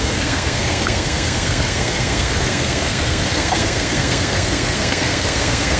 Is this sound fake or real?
fake